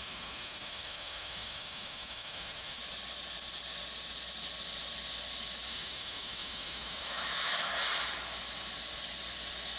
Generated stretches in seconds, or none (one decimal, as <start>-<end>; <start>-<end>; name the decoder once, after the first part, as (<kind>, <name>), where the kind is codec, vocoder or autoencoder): 0.0-2.8 (autoencoder, DAC-VAE); 5.7-7.8